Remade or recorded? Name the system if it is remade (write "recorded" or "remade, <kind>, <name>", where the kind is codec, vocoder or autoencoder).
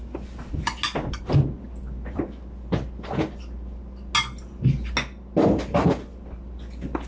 recorded